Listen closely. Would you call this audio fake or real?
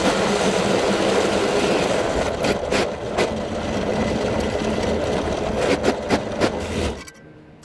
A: real